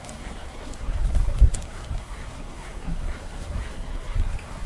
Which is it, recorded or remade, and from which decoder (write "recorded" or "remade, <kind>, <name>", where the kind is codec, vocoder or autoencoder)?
remade, codec, SNAC